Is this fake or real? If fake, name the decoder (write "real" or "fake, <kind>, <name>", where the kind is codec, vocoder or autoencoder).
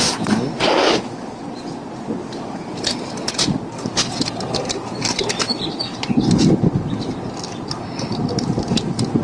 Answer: real